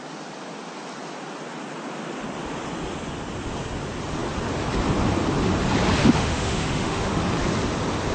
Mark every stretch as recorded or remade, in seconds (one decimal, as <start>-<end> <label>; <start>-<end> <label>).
0.0-6.0 recorded; 6.0-7.2 remade; 7.2-8.1 recorded